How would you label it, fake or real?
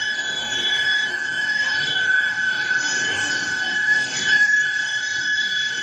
fake